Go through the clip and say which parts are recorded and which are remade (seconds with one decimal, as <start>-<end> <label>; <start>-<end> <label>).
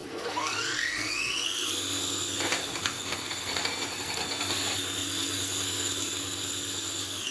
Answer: 0.0-7.3 remade